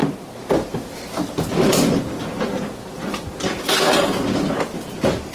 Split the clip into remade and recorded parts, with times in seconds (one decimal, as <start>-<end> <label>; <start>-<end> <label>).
0.0-5.3 recorded

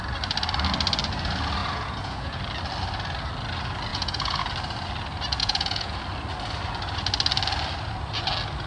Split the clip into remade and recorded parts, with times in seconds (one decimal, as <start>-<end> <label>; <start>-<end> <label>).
0.0-1.6 recorded; 1.6-2.4 remade; 2.4-3.9 recorded; 3.9-4.4 remade; 4.4-5.4 recorded; 5.4-6.0 remade; 6.0-8.7 recorded

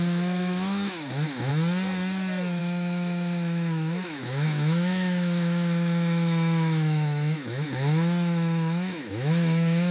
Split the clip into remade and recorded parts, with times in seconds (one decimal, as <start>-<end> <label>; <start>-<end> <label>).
0.0-1.5 remade; 1.5-2.6 recorded; 2.6-9.9 remade

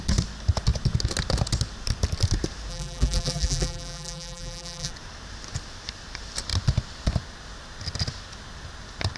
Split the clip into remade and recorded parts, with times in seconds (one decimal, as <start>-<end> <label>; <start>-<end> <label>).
0.0-2.7 recorded; 2.7-4.9 remade; 4.9-9.2 recorded

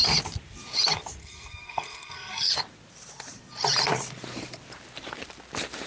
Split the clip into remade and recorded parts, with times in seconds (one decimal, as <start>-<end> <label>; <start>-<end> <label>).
0.0-1.2 recorded; 1.2-2.5 remade; 2.5-5.9 recorded